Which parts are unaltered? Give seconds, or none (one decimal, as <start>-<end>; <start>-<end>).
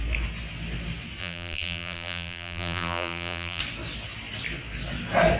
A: 0.0-1.2; 3.6-5.4